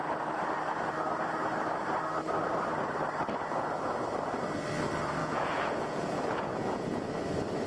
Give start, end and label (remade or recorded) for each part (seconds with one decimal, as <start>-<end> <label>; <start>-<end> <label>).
0.0-5.2 recorded; 5.2-7.1 remade; 7.1-7.7 recorded

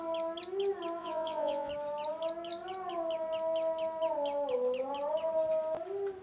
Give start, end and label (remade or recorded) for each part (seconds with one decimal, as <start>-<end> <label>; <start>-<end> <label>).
0.0-1.0 recorded; 1.0-1.7 remade; 1.7-6.2 recorded